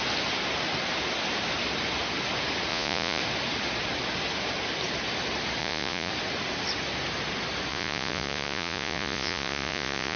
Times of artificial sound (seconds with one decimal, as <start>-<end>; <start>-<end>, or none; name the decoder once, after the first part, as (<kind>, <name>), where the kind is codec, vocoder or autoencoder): 2.7-3.2 (vocoder, Vocos); 5.6-6.1; 7.7-10.2